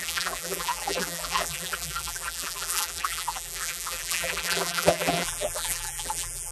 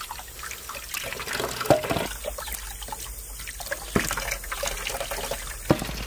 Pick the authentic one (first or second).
second